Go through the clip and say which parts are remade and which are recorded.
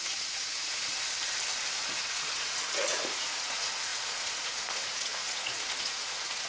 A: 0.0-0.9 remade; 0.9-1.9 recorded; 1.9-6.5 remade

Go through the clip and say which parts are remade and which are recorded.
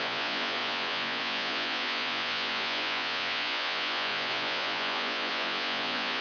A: 0.0-6.2 remade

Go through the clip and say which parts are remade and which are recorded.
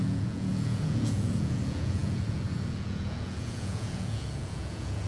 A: 0.0-5.1 remade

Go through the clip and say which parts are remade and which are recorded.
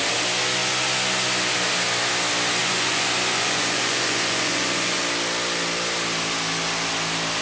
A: 0.0-2.6 recorded; 2.6-5.0 remade; 5.0-7.4 recorded